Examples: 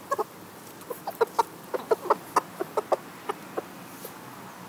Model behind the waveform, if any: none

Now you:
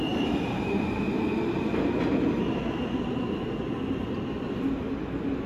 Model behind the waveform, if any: none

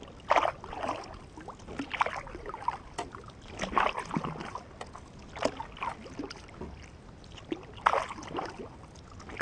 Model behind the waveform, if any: none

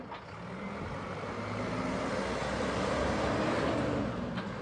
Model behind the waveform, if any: none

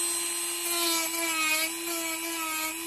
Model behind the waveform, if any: none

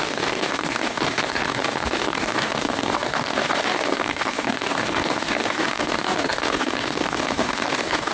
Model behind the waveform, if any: codec, DAC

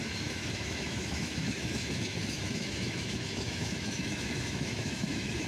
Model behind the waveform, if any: autoencoder, DAC-VAE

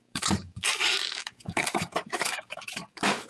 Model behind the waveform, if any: codec, DAC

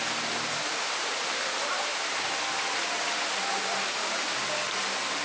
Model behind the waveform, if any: vocoder, BigVGAN v2